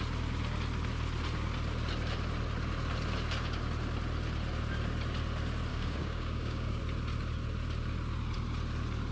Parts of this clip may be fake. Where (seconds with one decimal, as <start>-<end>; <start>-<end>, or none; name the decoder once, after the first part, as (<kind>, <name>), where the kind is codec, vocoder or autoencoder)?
5.7-6.8 (codec, DAC)